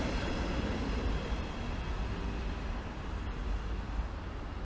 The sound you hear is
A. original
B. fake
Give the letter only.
A